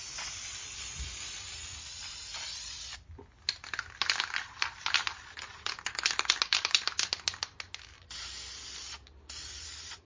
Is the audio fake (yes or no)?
no